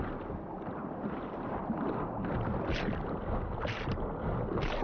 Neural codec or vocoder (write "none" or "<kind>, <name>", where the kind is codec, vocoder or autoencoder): none